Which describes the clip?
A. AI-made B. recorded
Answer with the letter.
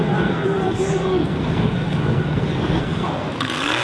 A